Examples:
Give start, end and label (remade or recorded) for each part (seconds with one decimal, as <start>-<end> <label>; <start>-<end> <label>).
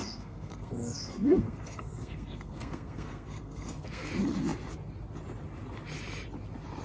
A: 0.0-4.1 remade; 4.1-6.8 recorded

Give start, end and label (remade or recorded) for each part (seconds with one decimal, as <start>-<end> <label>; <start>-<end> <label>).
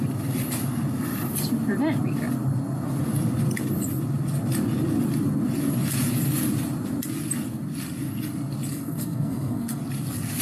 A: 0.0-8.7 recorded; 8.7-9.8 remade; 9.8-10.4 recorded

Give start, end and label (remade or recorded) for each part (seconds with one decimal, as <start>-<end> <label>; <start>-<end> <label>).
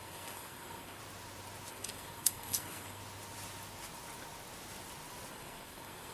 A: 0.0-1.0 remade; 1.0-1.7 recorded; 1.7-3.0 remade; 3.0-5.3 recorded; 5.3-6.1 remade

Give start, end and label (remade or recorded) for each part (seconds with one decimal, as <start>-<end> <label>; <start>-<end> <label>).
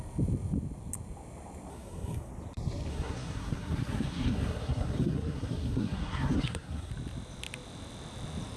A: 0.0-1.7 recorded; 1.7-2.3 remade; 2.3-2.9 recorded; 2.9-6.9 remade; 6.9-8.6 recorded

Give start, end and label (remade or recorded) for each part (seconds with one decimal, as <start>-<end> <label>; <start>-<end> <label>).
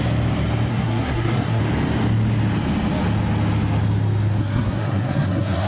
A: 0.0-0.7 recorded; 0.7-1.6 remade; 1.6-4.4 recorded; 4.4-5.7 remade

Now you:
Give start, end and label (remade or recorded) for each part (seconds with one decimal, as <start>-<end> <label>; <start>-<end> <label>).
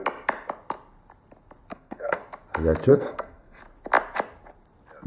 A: 0.0-1.7 recorded; 1.7-2.2 remade; 2.2-2.9 recorded; 2.9-3.6 remade; 3.6-5.1 recorded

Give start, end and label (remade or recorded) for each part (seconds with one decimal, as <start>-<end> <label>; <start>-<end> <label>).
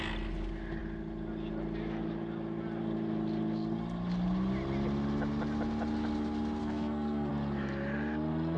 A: 0.0-6.6 recorded; 6.6-7.3 remade; 7.3-8.6 recorded